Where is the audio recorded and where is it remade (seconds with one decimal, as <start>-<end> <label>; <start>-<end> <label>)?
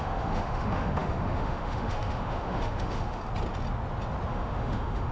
0.0-3.2 remade; 3.2-4.3 recorded; 4.3-5.1 remade